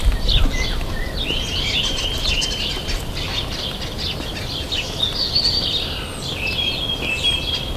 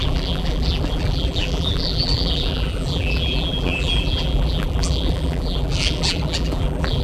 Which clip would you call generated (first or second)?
second